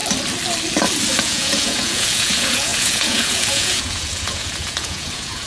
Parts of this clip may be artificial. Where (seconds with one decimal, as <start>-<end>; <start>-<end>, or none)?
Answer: 1.2-5.5